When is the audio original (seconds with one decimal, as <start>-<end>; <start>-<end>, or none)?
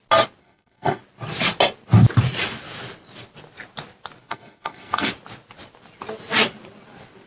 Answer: 0.0-0.4; 1.0-4.3; 5.1-7.3